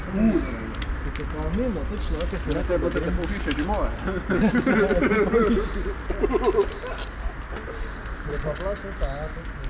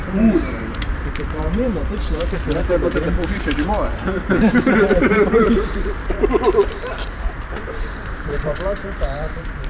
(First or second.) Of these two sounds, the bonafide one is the first